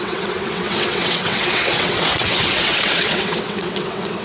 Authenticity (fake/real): fake